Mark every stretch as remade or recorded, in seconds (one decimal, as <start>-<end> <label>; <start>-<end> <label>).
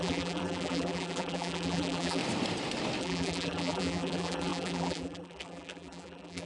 0.0-2.2 remade; 2.2-3.0 recorded; 3.0-6.5 remade